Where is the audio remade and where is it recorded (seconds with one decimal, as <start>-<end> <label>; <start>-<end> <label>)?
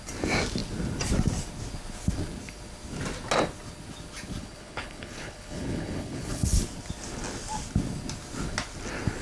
0.0-4.4 recorded; 4.4-6.6 remade; 6.6-9.2 recorded